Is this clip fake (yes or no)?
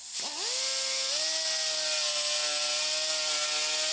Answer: no